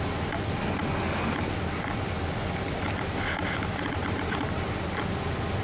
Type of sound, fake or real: real